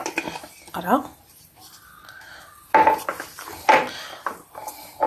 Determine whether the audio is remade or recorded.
recorded